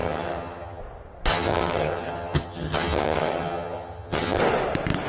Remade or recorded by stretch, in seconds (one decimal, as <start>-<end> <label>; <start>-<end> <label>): 0.0-0.8 remade; 0.8-1.3 recorded; 1.3-4.4 remade; 4.4-5.1 recorded